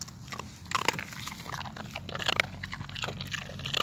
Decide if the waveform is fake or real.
real